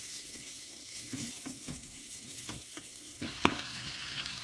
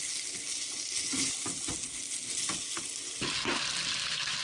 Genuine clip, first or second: second